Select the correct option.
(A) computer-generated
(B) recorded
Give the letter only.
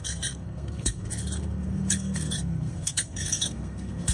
A